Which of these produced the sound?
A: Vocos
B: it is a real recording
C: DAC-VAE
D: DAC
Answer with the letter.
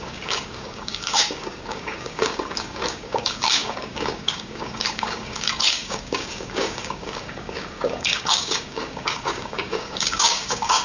D